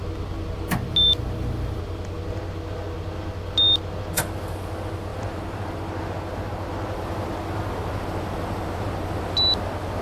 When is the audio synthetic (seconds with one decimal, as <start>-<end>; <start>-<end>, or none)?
none